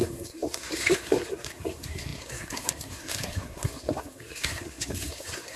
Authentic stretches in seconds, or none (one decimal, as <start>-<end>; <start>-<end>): none